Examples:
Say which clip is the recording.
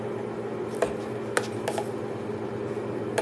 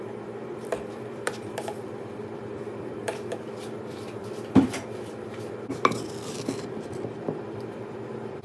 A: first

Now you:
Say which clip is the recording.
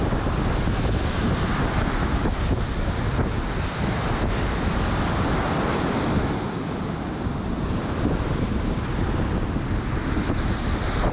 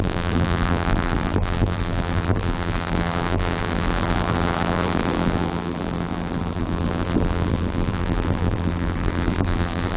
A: first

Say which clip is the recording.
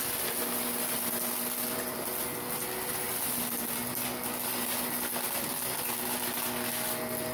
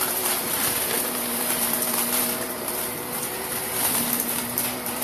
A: first